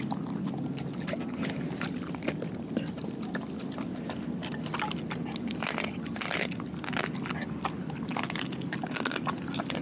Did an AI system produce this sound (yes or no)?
no